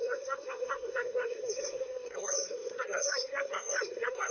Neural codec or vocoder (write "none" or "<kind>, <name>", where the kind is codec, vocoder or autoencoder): codec, SNAC